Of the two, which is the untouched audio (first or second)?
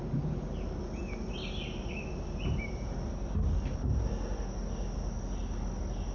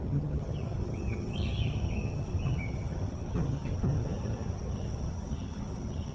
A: first